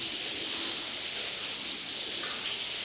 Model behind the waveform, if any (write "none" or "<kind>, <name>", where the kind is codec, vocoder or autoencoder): none